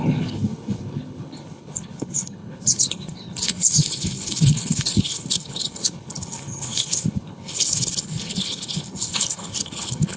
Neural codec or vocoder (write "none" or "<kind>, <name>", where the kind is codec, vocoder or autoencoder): codec, HILCodec